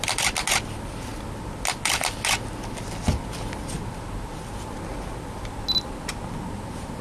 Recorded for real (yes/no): yes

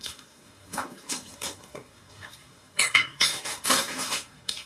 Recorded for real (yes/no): no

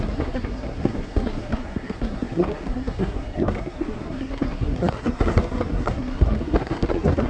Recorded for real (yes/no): no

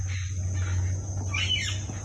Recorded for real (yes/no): yes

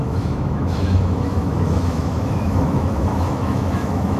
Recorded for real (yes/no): no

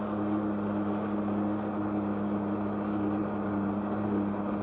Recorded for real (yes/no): yes